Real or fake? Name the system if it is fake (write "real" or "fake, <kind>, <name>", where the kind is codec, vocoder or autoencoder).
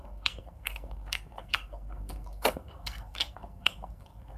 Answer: fake, codec, SNAC